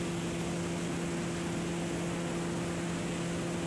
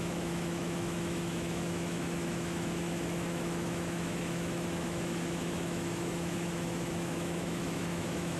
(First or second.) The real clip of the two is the first